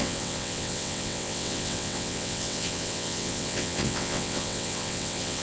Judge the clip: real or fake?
fake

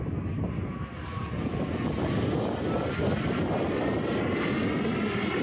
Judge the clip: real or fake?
real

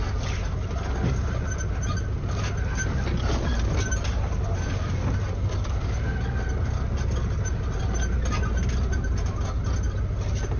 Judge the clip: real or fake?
real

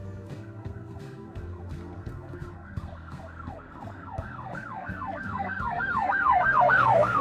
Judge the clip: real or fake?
fake